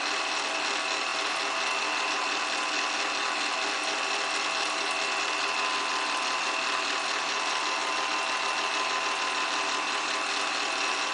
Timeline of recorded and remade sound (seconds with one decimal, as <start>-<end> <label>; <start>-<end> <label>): 0.0-11.1 recorded